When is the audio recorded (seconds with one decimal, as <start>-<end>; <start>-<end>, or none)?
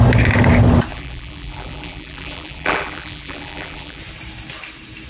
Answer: 0.0-0.9; 4.0-5.1